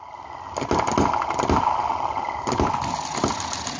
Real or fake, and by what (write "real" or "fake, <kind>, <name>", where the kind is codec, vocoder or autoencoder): real